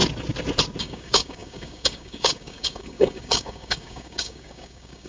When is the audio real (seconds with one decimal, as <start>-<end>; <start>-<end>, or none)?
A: 0.0-0.8